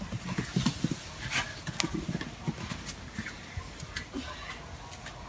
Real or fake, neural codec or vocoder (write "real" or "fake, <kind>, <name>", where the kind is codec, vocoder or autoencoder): real